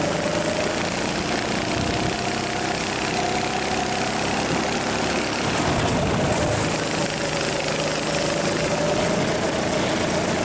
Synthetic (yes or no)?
no